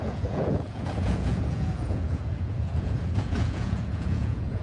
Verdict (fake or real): fake